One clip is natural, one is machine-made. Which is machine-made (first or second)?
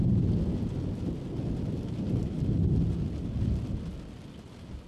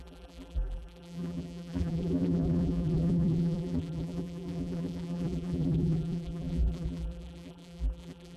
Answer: second